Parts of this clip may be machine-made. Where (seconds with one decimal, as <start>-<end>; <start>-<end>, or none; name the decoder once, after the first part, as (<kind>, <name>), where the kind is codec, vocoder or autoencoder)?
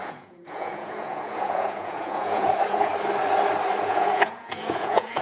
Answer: 0.0-2.9 (vocoder, Vocos); 3.8-5.2